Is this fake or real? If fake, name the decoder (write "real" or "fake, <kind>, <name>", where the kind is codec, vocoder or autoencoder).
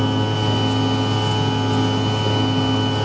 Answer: real